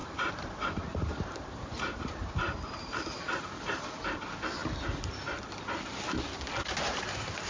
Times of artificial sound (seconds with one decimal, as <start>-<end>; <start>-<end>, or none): 0.0-3.0